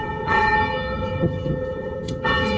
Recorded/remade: remade